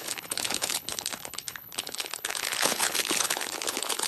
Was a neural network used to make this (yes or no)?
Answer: yes